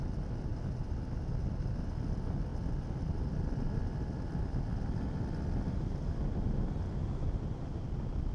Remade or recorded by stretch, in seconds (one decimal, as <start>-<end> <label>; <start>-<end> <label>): 0.0-8.3 recorded